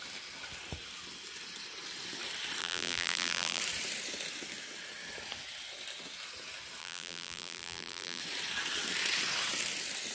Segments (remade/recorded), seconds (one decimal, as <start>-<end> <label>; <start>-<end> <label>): 0.0-2.6 recorded; 2.6-3.6 remade; 3.6-6.8 recorded; 6.8-8.2 remade; 8.2-10.1 recorded